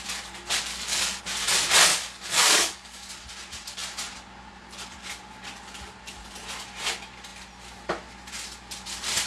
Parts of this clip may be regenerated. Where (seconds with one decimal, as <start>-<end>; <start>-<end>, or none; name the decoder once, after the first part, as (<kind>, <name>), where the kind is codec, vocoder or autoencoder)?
0.7-1.2 (codec, DAC); 1.9-3.1